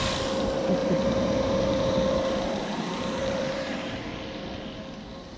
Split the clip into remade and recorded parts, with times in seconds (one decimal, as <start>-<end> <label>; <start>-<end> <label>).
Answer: 0.0-0.8 recorded; 0.8-4.0 remade; 4.0-5.4 recorded